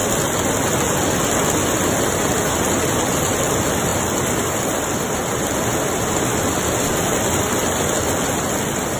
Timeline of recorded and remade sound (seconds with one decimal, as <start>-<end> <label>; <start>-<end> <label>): 0.0-9.0 recorded